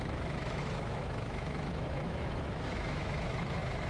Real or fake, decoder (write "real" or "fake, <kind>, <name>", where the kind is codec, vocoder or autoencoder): fake, autoencoder, DAC-VAE